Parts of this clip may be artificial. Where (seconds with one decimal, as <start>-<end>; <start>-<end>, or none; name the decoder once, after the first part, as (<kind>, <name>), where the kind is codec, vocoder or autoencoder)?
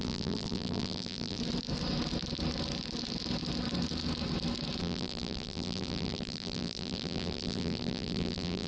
0.0-1.4 (vocoder, BigVGAN v2); 4.8-8.7